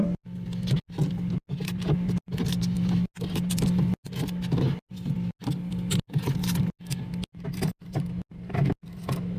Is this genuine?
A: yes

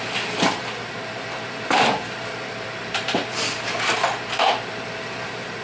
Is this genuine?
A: no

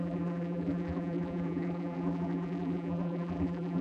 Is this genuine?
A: no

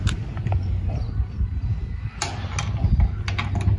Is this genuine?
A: yes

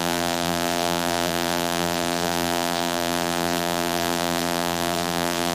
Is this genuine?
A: no